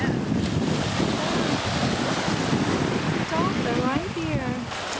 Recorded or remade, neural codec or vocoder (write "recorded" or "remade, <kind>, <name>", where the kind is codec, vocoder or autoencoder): recorded